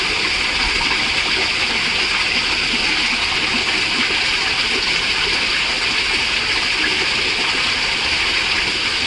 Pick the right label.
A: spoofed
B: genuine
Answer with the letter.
B